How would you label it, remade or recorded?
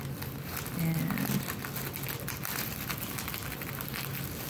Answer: recorded